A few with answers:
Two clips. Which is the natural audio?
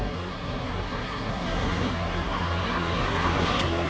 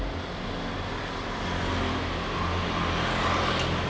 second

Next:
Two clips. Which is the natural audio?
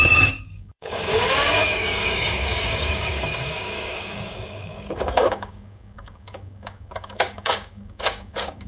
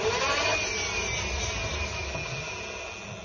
second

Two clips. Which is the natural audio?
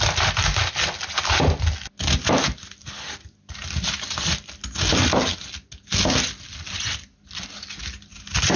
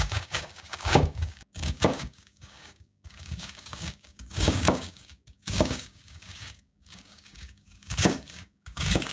first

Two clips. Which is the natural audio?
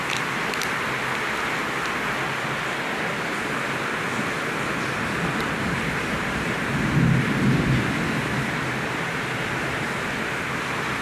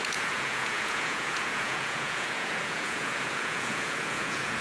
first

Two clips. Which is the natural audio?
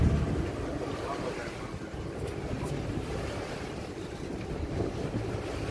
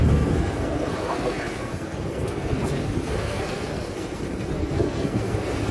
first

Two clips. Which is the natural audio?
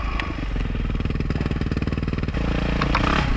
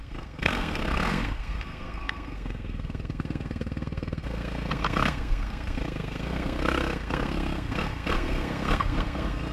first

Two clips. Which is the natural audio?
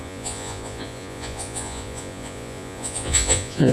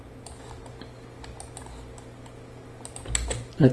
second